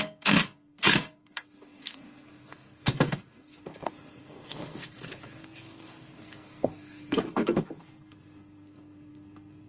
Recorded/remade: remade